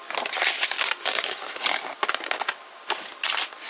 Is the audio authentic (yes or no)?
yes